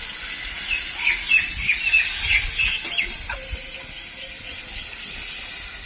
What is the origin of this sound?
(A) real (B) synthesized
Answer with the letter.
A